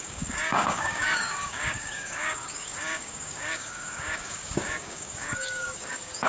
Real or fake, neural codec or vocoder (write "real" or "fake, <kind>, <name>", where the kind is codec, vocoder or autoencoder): fake, codec, DAC